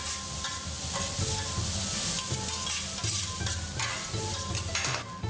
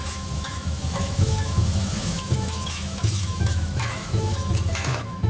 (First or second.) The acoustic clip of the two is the first